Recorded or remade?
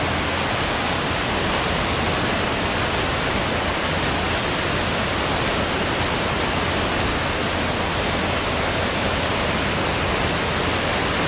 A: recorded